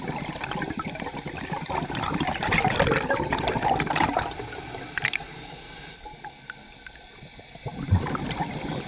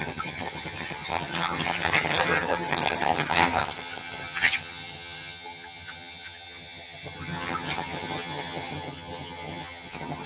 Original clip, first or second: first